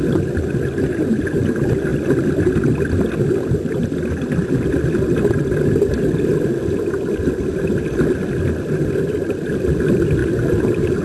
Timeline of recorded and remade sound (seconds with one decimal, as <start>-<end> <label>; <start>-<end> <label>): 0.0-11.0 recorded